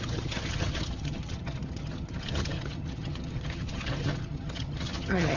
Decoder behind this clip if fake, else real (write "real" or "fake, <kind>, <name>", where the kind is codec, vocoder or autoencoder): fake, vocoder, HiFi-GAN